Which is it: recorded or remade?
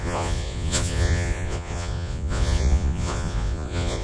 remade